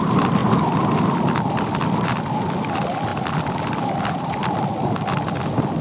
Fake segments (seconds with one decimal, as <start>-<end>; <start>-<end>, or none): 0.0-0.4; 1.0-5.8